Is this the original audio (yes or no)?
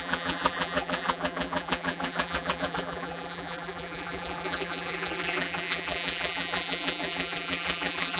no